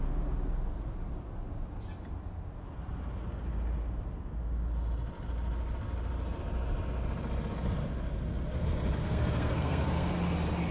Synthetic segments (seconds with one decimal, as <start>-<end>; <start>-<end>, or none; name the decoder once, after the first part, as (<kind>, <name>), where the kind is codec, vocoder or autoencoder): 9.0-10.1 (codec, SNAC)